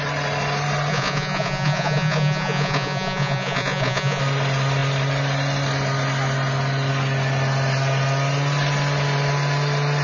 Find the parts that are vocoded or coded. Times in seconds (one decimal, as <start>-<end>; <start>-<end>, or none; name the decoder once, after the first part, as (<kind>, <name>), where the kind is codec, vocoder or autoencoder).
0.9-4.2 (vocoder, Vocos)

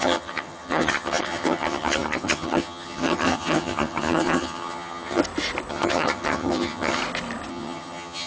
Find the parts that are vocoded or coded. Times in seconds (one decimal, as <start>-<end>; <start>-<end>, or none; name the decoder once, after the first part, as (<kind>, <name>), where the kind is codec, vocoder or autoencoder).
0.0-5.2 (vocoder, HiFi-GAN); 5.7-7.0; 7.5-8.3

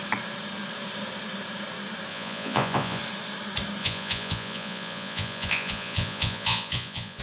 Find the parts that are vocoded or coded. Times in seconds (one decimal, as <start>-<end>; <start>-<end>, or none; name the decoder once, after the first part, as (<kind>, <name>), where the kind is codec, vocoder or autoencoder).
2.1-3.0 (vocoder, Vocos); 3.8-7.2

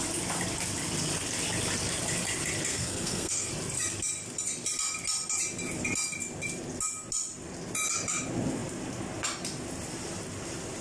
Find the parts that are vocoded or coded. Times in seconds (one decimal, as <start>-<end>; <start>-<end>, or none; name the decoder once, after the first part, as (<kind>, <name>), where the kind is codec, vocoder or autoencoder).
2.7-3.5 (codec, SNAC)

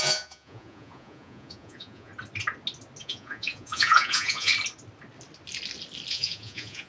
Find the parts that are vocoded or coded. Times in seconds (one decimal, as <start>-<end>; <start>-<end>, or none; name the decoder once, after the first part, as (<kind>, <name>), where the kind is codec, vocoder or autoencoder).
0.0-2.1 (vocoder, Vocos); 3.0-4.5; 6.1-6.9

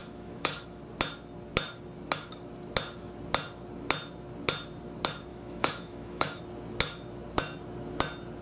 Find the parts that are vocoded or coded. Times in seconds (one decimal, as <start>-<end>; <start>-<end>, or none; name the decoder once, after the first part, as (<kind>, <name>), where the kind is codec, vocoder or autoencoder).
0.0-0.8 (autoencoder, DAC-VAE); 5.3-6.4

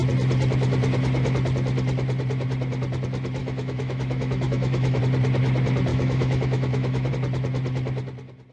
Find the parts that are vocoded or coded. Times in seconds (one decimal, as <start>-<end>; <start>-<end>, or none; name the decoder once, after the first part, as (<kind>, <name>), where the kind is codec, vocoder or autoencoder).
3.4-5.0 (autoencoder, DAC-VAE); 5.9-7.1

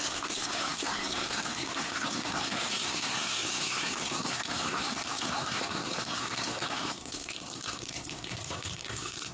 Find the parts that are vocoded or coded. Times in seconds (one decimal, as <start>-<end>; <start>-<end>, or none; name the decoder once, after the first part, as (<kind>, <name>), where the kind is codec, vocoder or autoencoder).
0.0-9.3 (codec, SNAC)